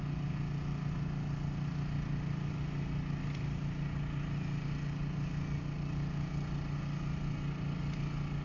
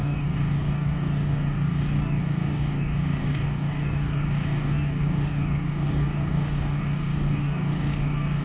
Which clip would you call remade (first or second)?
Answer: second